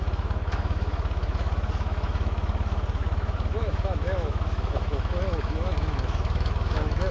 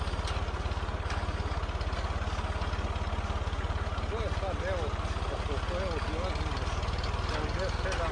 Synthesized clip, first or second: first